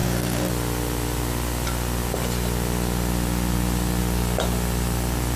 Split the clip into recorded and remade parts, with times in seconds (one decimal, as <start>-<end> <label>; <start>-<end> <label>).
0.0-0.5 remade; 0.5-5.4 recorded